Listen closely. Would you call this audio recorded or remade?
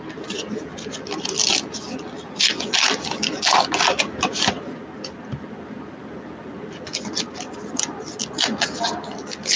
recorded